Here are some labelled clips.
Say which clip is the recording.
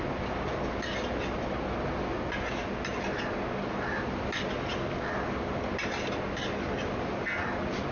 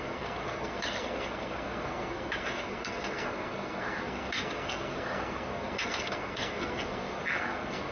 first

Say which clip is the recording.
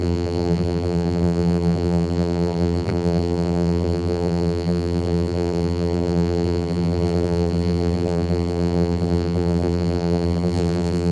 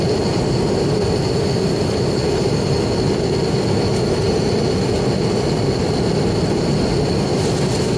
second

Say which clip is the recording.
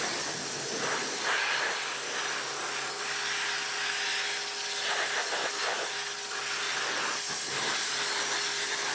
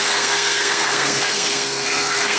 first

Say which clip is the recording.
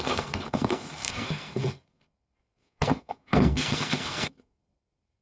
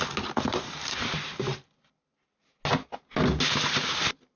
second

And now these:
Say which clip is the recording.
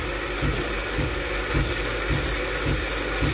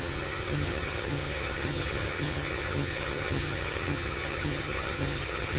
first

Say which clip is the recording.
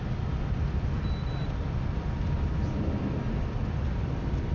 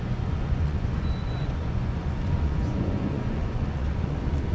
first